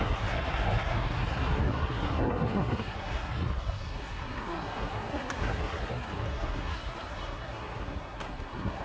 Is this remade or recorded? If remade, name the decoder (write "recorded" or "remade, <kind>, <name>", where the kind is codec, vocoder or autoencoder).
remade, codec, SNAC